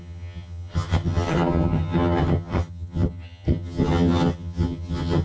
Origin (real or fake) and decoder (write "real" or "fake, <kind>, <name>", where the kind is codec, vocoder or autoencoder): fake, vocoder, HiFi-GAN